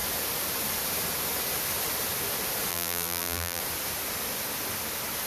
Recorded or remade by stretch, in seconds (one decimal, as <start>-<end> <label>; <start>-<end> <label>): 0.0-2.7 recorded; 2.7-3.6 remade; 3.6-5.3 recorded